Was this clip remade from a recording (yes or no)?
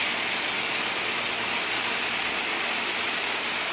no